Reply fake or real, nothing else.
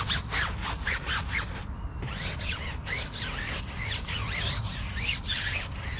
real